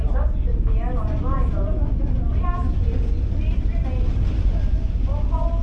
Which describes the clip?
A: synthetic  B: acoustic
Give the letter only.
B